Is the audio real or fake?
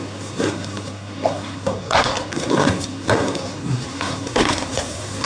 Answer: fake